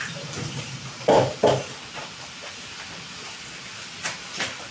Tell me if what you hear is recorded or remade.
recorded